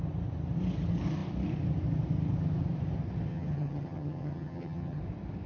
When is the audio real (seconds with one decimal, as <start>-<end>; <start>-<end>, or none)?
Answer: 0.0-3.3; 5.0-5.5